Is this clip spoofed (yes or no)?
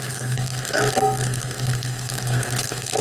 yes